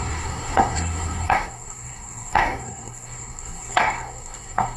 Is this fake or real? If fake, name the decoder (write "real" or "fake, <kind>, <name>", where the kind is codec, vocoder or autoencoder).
fake, codec, SNAC